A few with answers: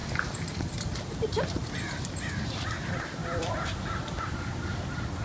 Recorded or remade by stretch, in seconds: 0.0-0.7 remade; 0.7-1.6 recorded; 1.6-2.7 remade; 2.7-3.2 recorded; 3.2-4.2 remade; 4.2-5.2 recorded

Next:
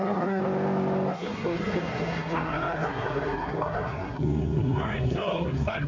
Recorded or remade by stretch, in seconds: 0.0-0.4 remade; 0.4-1.1 recorded; 1.1-5.9 remade

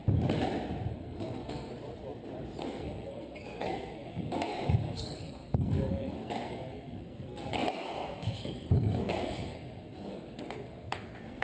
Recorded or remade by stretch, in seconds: 0.0-0.9 recorded; 0.9-1.7 remade; 1.7-2.6 recorded; 2.6-11.4 remade